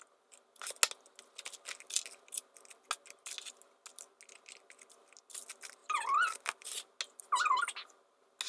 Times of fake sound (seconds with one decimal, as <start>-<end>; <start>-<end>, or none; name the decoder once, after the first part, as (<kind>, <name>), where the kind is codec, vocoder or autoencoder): none